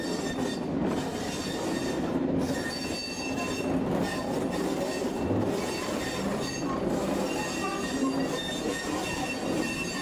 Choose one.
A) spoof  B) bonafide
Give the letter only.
B